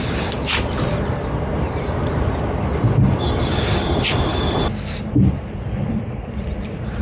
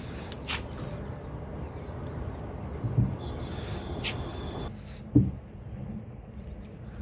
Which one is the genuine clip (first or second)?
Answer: second